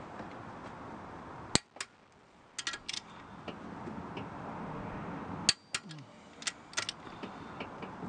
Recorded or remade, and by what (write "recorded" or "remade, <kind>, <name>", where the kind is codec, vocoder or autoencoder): recorded